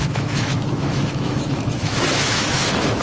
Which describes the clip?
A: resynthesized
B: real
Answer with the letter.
A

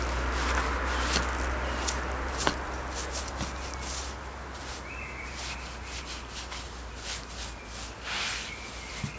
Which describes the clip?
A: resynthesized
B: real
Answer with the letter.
B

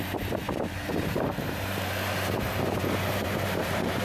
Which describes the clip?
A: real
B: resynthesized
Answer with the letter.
B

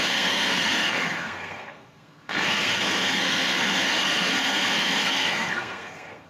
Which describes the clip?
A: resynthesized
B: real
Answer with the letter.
A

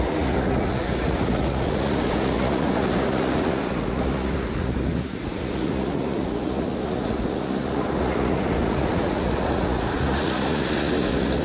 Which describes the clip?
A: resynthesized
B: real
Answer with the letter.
A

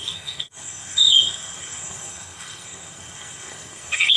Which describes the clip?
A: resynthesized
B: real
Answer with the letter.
A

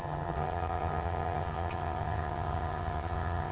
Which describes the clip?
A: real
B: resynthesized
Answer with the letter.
B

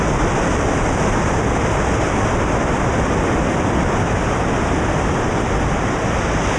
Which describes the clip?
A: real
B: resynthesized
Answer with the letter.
A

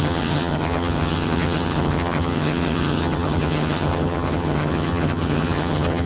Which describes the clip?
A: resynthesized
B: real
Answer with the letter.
A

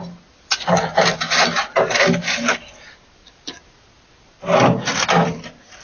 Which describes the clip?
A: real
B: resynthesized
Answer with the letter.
A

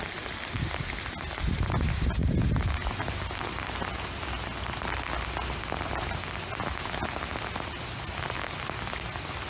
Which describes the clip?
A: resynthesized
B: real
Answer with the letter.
B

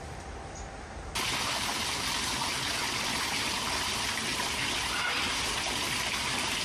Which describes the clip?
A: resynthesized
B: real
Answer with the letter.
B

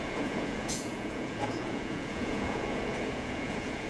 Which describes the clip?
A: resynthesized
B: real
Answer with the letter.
A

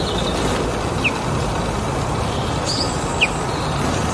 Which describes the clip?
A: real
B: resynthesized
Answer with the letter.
A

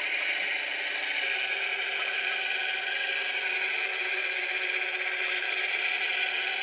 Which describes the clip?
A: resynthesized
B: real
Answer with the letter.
B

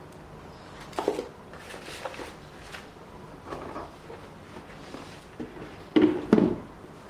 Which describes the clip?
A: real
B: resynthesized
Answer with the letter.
A